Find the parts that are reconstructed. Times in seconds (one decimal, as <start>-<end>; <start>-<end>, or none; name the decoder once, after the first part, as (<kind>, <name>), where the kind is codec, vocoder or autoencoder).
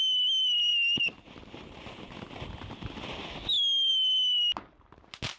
none